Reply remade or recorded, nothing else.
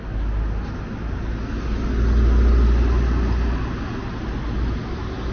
recorded